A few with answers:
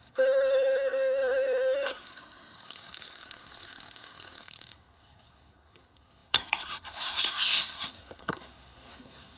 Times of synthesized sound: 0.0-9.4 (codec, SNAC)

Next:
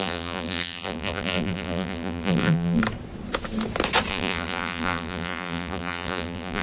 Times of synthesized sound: 0.0-2.8 (vocoder, BigVGAN v2); 4.1-6.6

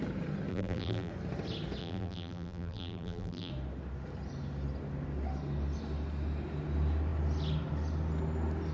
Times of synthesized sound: 0.5-1.1 (vocoder, BigVGAN v2); 1.8-3.5

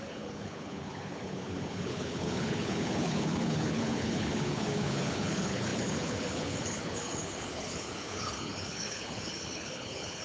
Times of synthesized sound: 0.0-10.2 (codec, HILCodec)

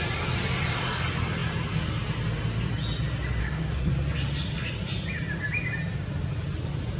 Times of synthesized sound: 3.4-3.9 (codec, SNAC)